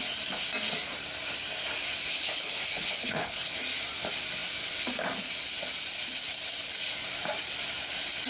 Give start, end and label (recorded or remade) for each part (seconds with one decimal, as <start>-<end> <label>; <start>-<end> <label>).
0.0-2.1 recorded; 2.1-3.5 remade; 3.5-8.3 recorded